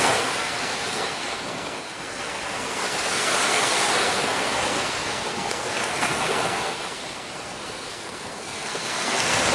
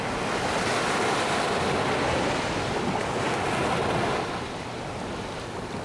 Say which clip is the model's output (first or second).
first